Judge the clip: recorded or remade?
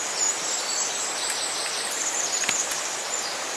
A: remade